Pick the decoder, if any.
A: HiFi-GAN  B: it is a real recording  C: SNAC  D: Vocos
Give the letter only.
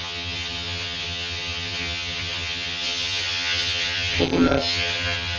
A